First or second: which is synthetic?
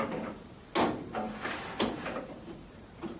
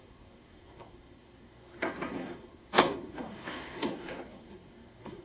second